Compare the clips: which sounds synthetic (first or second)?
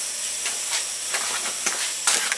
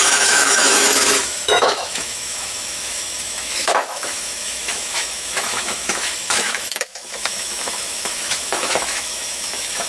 second